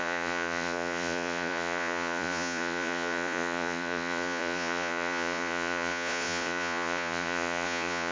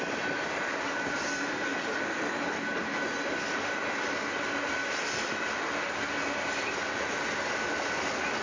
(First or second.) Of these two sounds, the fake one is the first